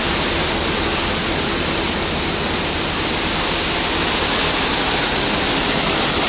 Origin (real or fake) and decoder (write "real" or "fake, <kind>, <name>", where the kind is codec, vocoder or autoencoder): real